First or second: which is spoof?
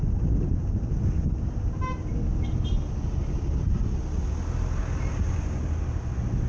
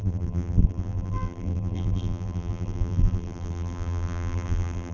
second